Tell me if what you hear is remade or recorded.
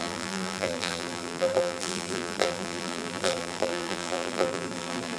remade